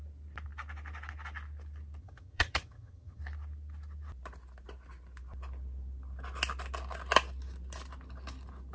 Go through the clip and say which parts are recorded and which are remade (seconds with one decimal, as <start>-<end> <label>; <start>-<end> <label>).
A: 0.0-2.0 recorded; 2.0-3.2 remade; 3.2-8.7 recorded

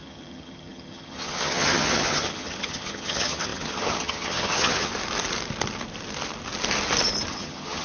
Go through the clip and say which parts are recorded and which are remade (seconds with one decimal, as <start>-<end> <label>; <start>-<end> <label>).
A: 0.0-4.9 remade; 4.9-7.3 recorded; 7.3-7.8 remade

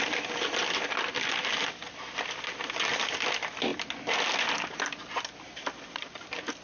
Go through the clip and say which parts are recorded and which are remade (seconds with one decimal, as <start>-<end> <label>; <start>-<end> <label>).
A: 0.0-6.6 recorded

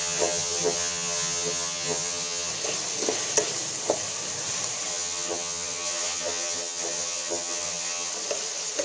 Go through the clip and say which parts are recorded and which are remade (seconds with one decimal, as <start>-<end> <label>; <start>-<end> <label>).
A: 0.0-2.5 remade; 2.5-4.9 recorded; 4.9-8.1 remade; 8.1-8.8 recorded

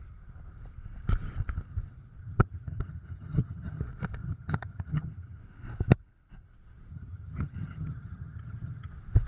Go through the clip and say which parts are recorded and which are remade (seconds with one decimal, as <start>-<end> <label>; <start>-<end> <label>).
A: 0.0-2.2 recorded; 2.2-3.8 remade; 3.8-4.2 recorded; 4.2-5.4 remade; 5.4-6.9 recorded; 6.9-8.9 remade; 8.9-9.3 recorded